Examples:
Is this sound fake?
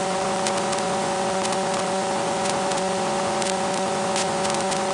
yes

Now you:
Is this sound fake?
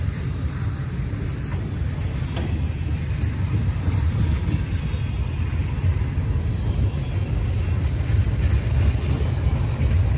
no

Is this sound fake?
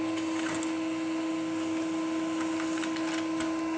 no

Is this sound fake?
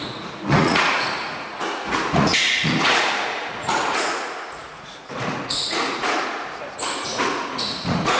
yes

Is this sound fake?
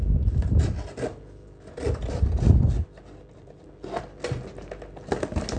no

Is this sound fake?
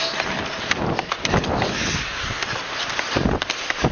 no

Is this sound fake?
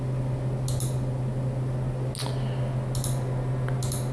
no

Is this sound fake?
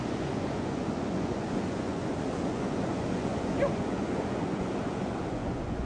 yes